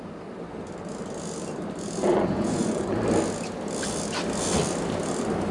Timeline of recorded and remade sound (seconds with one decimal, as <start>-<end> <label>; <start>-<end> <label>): 0.0-2.0 recorded; 2.0-3.0 remade; 3.0-5.5 recorded